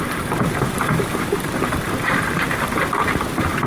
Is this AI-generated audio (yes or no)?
yes